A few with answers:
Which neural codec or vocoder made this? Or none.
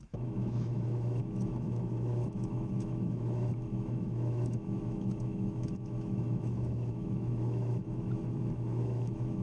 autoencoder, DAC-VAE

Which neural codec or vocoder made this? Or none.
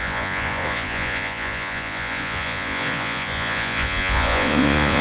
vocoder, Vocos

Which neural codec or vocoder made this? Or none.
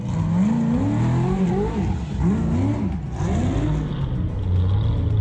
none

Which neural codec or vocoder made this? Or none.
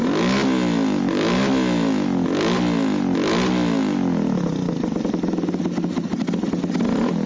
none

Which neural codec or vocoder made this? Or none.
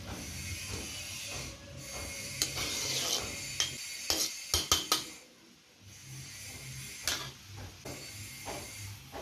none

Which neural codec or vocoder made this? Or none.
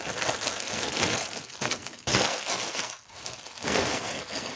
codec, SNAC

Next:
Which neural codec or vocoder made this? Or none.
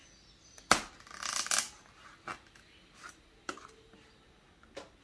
none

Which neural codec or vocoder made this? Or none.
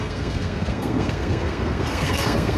codec, SNAC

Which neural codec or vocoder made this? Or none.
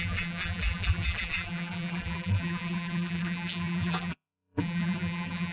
vocoder, BigVGAN v2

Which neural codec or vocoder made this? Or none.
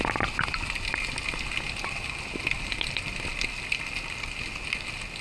none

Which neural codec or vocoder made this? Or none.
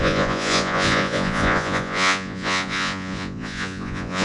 vocoder, Vocos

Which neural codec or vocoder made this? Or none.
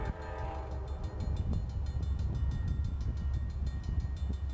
none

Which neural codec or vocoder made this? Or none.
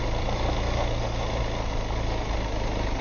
none